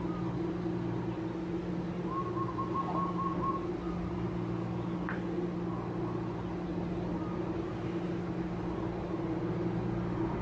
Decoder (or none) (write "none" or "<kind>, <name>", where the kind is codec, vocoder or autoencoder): none